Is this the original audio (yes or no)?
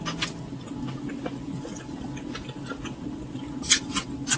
yes